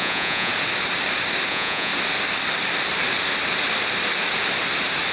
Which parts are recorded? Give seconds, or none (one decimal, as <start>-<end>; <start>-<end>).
0.5-1.5; 1.9-5.1